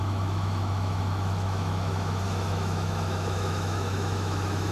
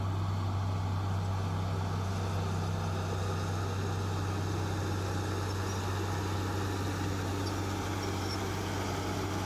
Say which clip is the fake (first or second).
first